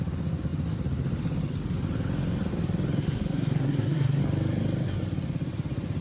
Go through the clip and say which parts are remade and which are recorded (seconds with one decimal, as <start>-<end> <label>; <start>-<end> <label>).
0.0-3.0 recorded; 3.0-4.2 remade; 4.2-6.0 recorded